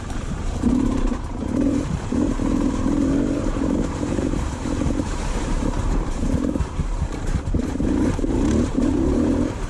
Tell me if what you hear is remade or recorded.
remade